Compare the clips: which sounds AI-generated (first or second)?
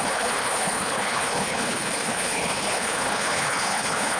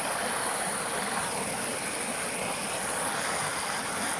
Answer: first